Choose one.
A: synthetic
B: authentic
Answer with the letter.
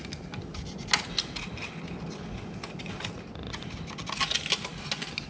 B